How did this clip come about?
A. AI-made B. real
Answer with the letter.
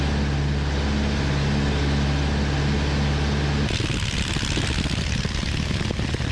B